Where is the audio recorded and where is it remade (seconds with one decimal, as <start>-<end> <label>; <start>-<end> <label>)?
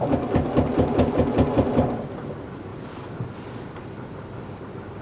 0.0-5.0 recorded